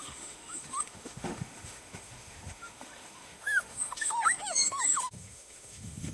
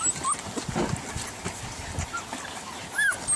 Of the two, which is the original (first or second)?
second